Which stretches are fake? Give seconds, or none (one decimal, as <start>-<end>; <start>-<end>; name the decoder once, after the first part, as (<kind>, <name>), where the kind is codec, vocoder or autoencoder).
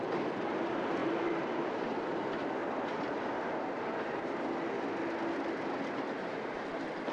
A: 0.0-2.6 (vocoder, BigVGAN v2); 6.5-7.1